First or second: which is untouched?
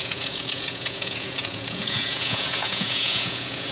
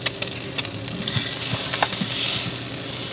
second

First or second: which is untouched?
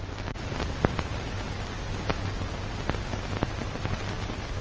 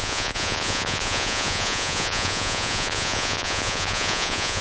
first